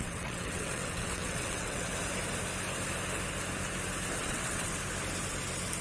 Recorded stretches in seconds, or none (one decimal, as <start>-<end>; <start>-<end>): 1.9-4.2; 4.7-5.8